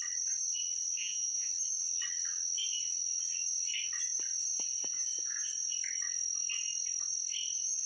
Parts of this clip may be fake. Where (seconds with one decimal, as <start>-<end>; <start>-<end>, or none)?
1.0-1.5